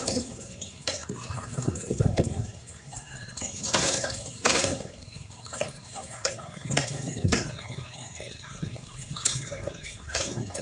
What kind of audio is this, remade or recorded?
remade